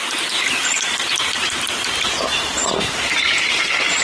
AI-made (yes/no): yes